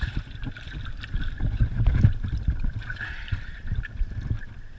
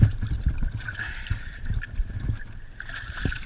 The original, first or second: second